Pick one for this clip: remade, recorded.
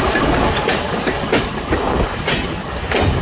recorded